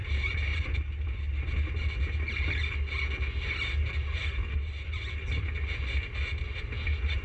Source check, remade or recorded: recorded